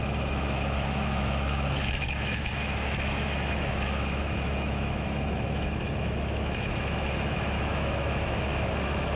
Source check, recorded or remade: remade